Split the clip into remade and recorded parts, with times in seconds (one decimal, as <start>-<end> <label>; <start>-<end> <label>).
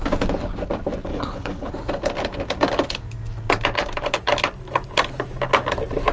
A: 0.0-1.1 recorded; 1.1-1.7 remade; 1.7-6.1 recorded